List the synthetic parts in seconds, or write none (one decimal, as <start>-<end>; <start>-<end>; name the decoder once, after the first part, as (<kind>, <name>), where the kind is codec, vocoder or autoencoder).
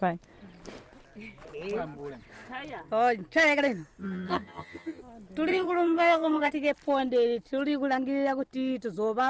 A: 4.0-5.0 (vocoder, HiFi-GAN); 5.5-6.5